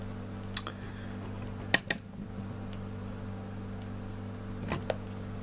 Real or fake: real